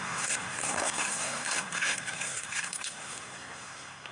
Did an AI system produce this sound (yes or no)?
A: yes